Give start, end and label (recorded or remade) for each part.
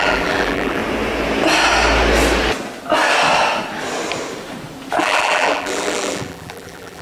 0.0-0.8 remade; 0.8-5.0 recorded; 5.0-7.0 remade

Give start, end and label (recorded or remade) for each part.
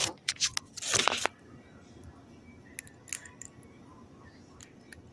0.0-5.1 recorded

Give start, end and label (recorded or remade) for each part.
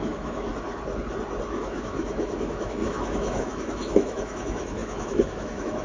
0.0-0.5 remade; 0.5-1.5 recorded; 1.5-5.8 remade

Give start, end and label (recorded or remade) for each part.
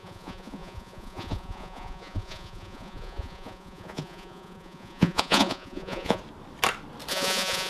0.0-6.2 remade; 6.2-7.1 recorded; 7.1-7.7 remade